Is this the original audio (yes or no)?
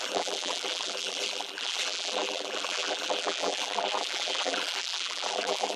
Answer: no